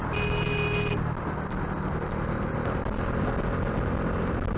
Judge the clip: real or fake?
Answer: real